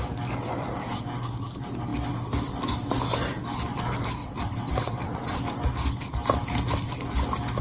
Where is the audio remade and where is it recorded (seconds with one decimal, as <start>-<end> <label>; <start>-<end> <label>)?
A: 0.0-4.2 recorded; 4.2-5.4 remade; 5.4-7.6 recorded